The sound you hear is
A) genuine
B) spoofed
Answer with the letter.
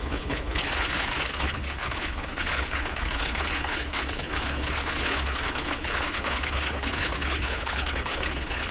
B